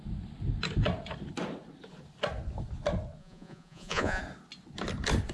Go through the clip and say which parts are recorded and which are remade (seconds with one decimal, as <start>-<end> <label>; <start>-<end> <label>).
0.0-3.2 recorded; 3.2-4.2 remade; 4.2-5.3 recorded

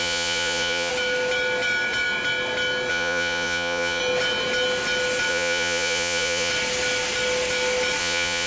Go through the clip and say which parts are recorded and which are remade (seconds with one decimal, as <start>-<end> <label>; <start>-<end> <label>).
0.0-0.9 remade; 0.9-2.9 recorded; 2.9-4.0 remade; 4.0-5.3 recorded; 5.3-6.5 remade; 6.5-8.0 recorded; 8.0-8.5 remade

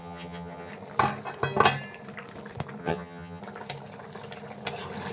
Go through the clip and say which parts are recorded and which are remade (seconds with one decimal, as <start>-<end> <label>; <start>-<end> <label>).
0.0-0.7 remade; 0.7-2.8 recorded; 2.8-3.4 remade; 3.4-5.1 recorded

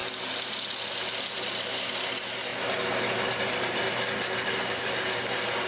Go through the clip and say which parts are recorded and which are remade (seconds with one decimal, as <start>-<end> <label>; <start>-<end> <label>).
0.0-0.9 recorded; 0.9-2.5 remade; 2.5-3.4 recorded; 3.4-5.7 remade

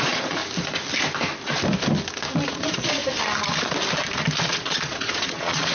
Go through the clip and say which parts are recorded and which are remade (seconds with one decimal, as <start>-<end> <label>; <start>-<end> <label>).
0.0-0.4 remade; 0.4-2.5 recorded; 2.5-3.0 remade; 3.0-4.4 recorded; 4.4-5.7 remade

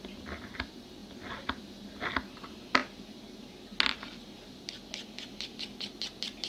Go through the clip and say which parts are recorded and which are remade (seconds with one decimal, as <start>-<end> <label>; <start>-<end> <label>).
0.0-6.5 recorded